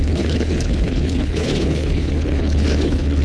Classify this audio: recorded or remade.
remade